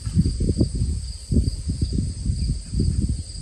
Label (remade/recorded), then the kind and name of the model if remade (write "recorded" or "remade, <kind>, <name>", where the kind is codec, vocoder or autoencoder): recorded